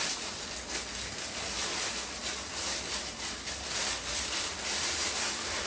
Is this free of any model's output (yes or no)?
yes